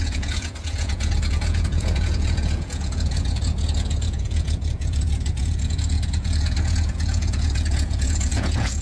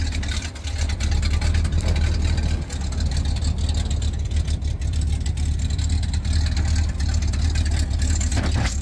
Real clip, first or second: second